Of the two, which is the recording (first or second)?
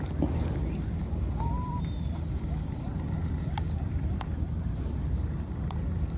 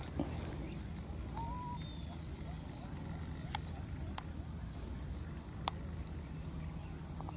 second